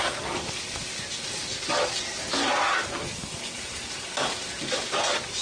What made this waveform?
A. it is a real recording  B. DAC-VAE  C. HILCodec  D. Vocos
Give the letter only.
A